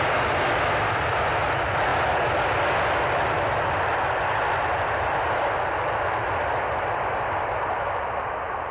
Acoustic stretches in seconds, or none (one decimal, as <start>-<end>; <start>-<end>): 0.0-8.7